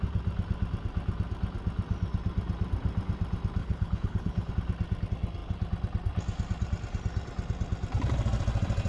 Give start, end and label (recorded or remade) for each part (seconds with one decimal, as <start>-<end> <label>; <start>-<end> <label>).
0.0-3.6 recorded; 3.6-4.5 remade; 4.5-8.9 recorded